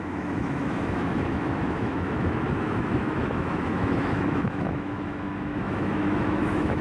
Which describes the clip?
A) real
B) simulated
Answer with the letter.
B